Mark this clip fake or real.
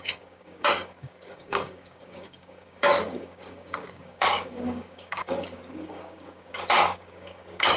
fake